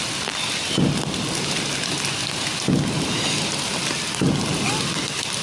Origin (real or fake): real